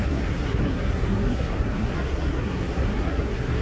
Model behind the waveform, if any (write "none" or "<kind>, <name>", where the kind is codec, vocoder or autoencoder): codec, SNAC